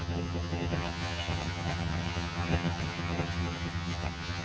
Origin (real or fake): fake